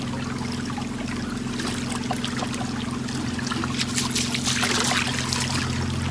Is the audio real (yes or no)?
yes